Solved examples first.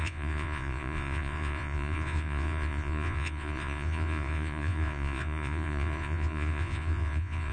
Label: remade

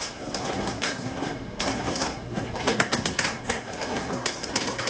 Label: remade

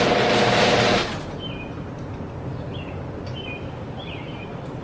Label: remade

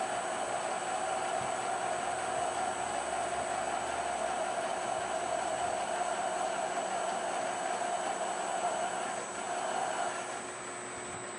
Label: recorded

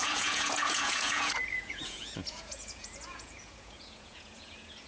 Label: remade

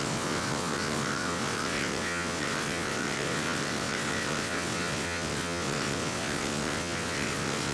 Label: remade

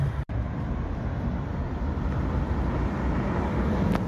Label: recorded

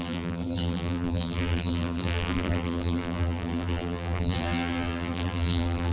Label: remade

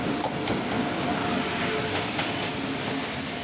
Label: recorded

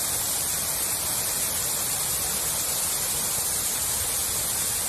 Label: remade